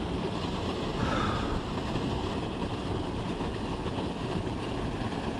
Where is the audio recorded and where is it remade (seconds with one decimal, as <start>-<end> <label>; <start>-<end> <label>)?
0.0-5.4 recorded